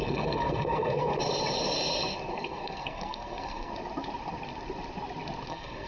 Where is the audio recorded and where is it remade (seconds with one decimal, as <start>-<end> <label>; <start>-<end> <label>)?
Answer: 0.0-1.1 remade; 1.1-2.3 recorded; 2.3-3.7 remade; 3.7-5.5 recorded; 5.5-5.9 remade